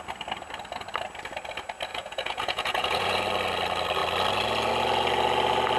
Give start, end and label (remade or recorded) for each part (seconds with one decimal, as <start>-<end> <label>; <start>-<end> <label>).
0.0-1.9 recorded; 1.9-3.2 remade; 3.2-5.8 recorded